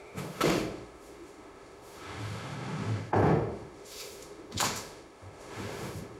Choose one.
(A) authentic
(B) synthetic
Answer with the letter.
B